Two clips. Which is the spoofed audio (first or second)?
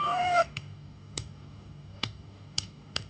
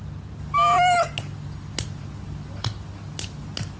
first